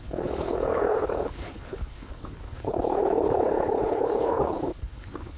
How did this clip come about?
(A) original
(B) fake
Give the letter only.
B